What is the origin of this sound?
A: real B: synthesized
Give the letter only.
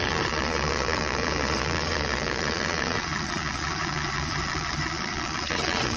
B